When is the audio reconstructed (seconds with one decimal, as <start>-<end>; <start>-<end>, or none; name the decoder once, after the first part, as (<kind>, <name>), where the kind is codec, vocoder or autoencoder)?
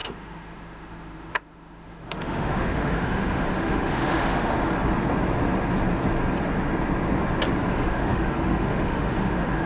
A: 0.0-4.5 (autoencoder, DAC-VAE); 7.7-9.7